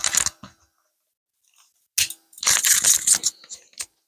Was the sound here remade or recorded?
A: recorded